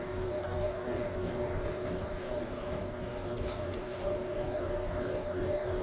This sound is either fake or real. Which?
fake